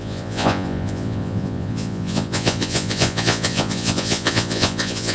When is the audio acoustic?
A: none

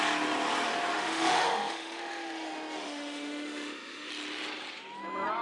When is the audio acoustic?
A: 0.0-0.9; 4.1-5.4

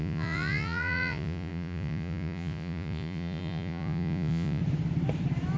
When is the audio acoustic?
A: 4.6-5.6

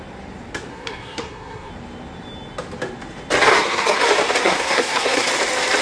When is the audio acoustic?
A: 0.0-0.7; 1.7-3.5; 4.0-4.4; 5.3-5.8

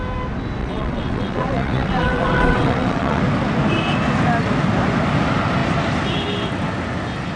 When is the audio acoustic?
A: 0.0-0.6; 3.2-7.4